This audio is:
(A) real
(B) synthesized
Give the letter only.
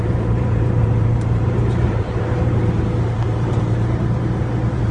B